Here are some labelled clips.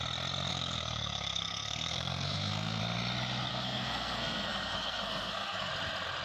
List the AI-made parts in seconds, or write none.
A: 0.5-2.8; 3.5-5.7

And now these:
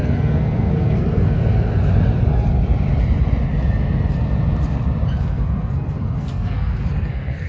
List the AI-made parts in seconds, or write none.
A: 0.0-1.4; 5.2-7.5

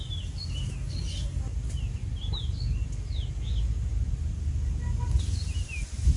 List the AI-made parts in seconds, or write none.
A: none

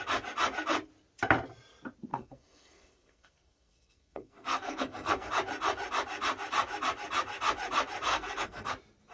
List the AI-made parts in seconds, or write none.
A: 2.1-5.3; 8.1-8.7

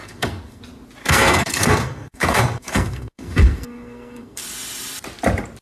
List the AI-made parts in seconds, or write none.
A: 0.0-0.6; 1.0-4.4

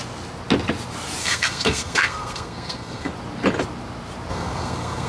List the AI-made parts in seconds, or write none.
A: 1.2-3.1; 4.3-5.1

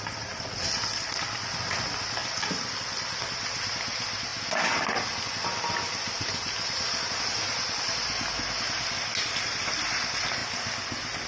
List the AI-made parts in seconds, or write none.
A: none